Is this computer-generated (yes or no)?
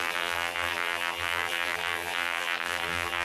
yes